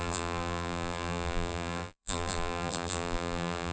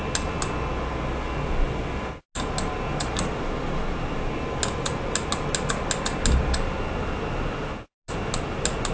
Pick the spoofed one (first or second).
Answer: first